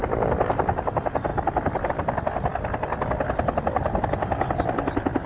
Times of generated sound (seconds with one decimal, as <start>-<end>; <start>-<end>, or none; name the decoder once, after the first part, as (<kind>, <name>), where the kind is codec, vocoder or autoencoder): none